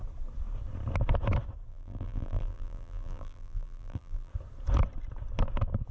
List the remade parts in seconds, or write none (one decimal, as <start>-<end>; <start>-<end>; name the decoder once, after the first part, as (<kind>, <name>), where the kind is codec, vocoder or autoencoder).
1.7-4.3 (vocoder, BigVGAN v2)